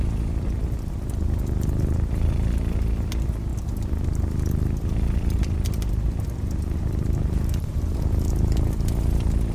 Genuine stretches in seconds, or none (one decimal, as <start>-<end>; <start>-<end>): 0.0-9.5